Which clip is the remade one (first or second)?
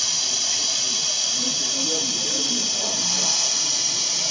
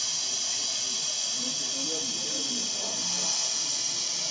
first